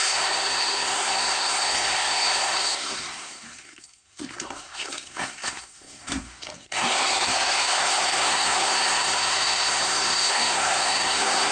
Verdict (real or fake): fake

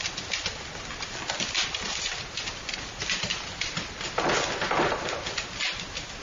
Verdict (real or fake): real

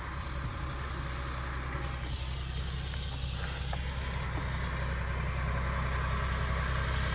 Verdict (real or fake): real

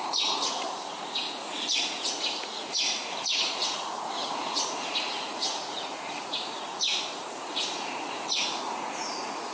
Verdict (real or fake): fake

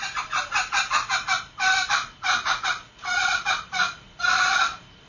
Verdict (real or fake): fake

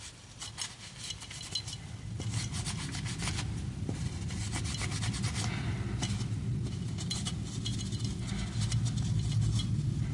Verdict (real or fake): real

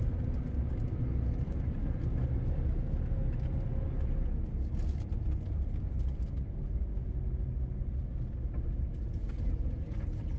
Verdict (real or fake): real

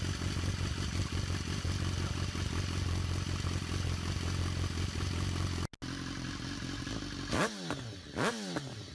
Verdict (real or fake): real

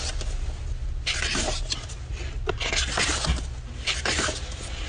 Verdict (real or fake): real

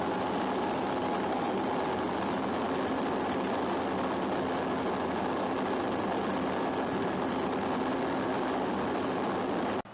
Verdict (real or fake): real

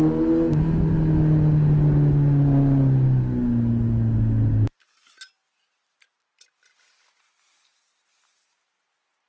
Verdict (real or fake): real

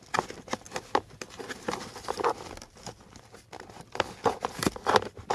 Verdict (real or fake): real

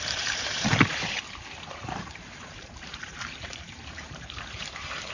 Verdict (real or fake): fake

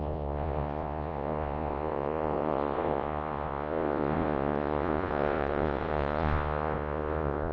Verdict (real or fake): fake